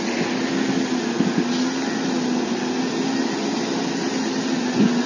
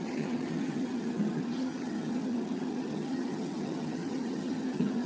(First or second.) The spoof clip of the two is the second